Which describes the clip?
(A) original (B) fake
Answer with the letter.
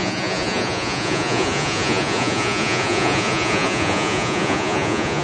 B